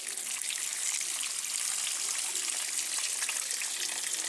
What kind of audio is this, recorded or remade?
recorded